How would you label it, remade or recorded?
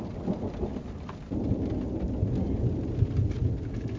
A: recorded